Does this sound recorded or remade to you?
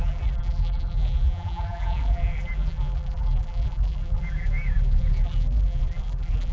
remade